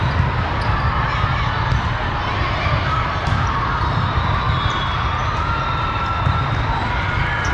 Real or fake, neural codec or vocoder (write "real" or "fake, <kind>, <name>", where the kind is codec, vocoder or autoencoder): real